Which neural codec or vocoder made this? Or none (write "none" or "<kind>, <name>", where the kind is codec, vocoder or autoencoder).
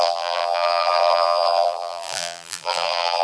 vocoder, BigVGAN v2